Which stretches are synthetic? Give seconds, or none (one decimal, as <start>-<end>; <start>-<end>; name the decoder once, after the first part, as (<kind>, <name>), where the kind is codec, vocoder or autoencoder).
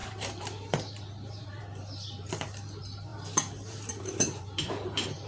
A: 0.0-5.3 (vocoder, BigVGAN v2)